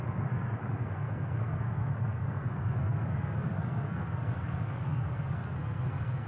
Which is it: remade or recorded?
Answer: remade